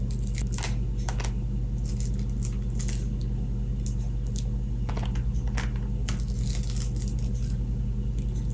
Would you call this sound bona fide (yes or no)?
yes